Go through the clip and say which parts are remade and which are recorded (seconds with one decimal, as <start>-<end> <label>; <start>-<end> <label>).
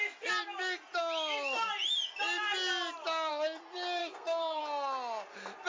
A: 0.0-4.0 recorded; 4.0-4.6 remade; 4.6-5.7 recorded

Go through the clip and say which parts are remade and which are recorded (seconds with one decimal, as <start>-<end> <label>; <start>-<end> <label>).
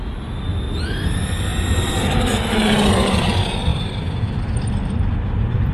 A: 0.0-1.5 recorded; 1.5-2.4 remade; 2.4-3.7 recorded; 3.7-4.2 remade; 4.2-5.7 recorded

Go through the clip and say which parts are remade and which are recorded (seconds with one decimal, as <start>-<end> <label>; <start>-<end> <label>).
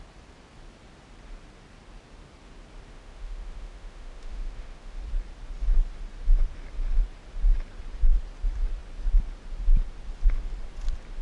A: 0.0-2.9 recorded; 2.9-5.0 remade; 5.0-11.2 recorded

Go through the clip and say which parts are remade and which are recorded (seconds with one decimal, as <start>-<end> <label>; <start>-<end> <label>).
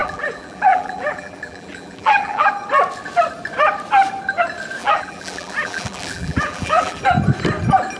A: 0.0-2.5 remade; 2.5-4.8 recorded; 4.8-7.0 remade; 7.0-8.0 recorded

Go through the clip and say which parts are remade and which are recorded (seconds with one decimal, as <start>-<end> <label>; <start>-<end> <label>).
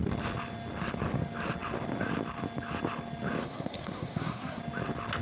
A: 0.0-3.4 recorded; 3.4-4.6 remade; 4.6-5.2 recorded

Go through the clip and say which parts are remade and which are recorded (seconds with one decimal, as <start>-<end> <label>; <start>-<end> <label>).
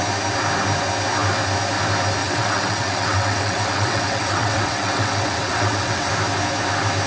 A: 0.0-2.2 recorded; 2.2-6.1 remade; 6.1-7.1 recorded